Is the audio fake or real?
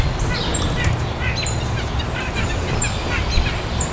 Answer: real